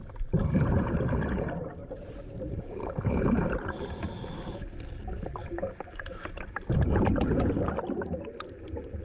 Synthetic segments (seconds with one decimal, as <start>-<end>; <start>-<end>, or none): 1.8-3.0; 5.4-7.7